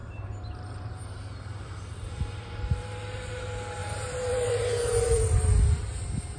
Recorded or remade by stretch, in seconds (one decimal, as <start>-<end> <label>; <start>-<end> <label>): 0.0-2.6 remade; 2.6-3.8 recorded; 3.8-4.5 remade; 4.5-6.4 recorded